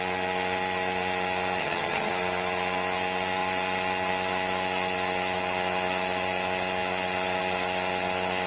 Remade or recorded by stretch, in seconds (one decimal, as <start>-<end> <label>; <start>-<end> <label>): 0.0-1.6 recorded; 1.6-2.1 remade; 2.1-8.5 recorded